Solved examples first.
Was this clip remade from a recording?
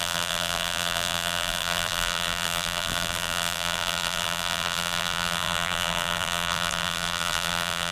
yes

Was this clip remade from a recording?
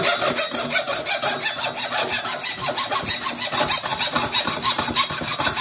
no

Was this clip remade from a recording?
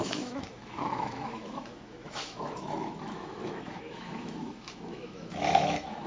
yes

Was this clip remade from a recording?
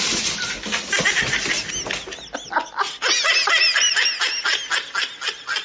no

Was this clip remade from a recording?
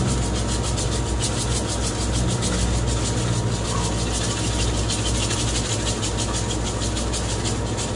no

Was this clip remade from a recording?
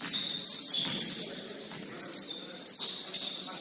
yes